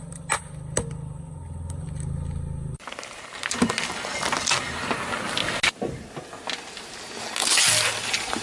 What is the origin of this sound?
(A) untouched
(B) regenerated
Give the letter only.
A